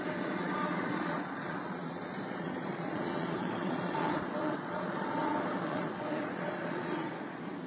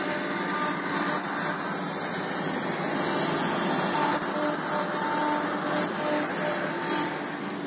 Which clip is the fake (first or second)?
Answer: first